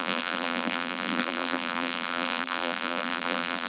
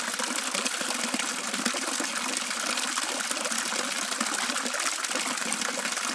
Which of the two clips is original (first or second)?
second